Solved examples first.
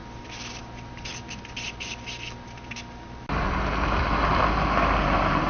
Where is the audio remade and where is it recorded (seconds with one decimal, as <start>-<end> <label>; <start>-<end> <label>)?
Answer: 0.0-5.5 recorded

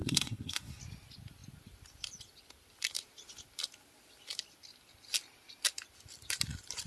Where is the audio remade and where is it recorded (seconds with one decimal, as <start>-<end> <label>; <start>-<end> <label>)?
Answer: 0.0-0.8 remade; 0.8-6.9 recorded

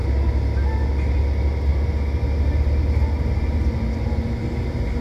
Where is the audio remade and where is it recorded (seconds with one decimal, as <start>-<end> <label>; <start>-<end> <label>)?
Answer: 0.0-5.0 recorded

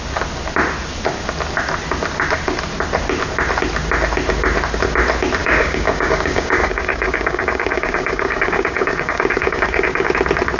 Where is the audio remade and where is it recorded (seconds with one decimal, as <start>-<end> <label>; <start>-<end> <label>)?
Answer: 0.0-5.4 recorded; 5.4-10.1 remade; 10.1-10.6 recorded

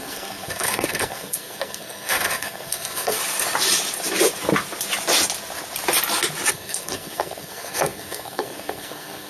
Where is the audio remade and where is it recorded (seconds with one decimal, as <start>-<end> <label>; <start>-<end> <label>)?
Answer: 0.0-3.2 remade; 3.2-6.5 recorded; 6.5-9.3 remade